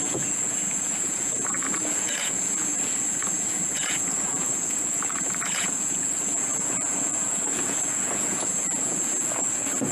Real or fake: fake